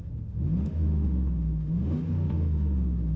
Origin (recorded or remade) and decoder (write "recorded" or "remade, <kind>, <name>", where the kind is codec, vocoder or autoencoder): remade, autoencoder, DAC-VAE